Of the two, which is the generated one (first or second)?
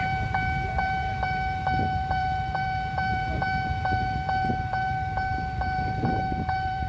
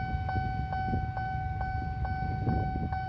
first